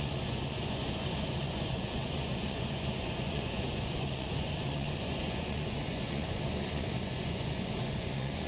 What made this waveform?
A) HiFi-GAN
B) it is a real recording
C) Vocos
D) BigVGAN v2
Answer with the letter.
C